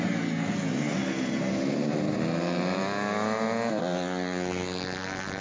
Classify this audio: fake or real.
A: real